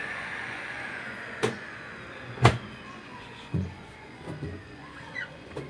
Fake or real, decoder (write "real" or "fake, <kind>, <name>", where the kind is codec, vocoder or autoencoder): fake, vocoder, Vocos